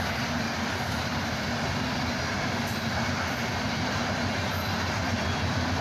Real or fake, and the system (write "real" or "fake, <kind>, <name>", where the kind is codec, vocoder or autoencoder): real